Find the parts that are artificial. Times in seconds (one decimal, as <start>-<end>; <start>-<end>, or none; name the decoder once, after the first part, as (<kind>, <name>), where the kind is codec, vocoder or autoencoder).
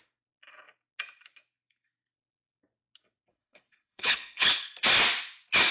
3.3-4.7 (codec, HILCodec)